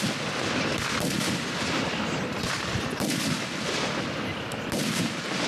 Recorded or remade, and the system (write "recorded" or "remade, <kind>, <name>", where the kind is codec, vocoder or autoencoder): recorded